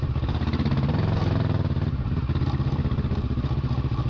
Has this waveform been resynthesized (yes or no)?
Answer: no